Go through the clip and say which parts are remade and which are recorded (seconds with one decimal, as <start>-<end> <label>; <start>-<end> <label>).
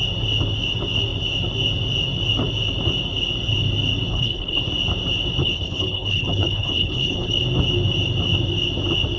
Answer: 0.0-4.1 recorded; 4.1-4.6 remade; 4.6-5.4 recorded; 5.4-7.4 remade; 7.4-9.2 recorded